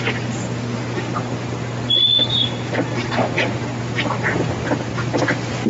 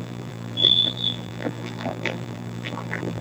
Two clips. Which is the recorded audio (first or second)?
first